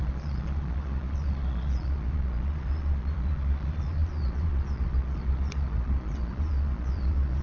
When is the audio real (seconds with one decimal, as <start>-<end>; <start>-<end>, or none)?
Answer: none